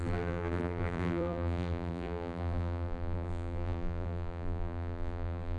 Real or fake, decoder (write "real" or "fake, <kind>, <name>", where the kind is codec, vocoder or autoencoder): fake, vocoder, BigVGAN v2